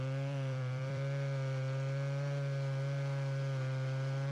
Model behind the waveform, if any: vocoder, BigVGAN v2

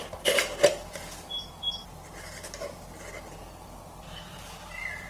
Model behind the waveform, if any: none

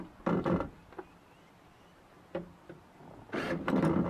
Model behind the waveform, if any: none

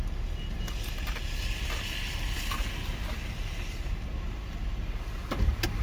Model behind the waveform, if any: none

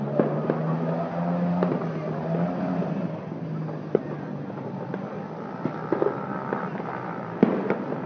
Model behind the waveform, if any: none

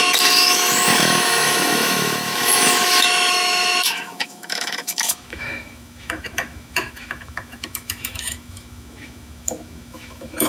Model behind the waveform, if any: autoencoder, DAC-VAE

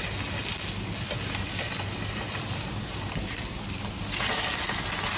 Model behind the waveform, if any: none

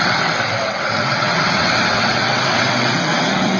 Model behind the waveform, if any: vocoder, WaveNeXt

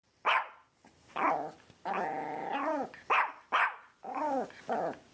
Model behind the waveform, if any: none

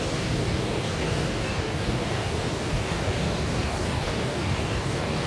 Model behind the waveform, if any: codec, DAC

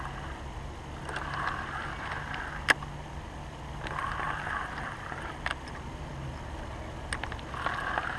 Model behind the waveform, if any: none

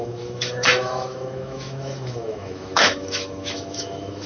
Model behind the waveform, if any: autoencoder, DAC-VAE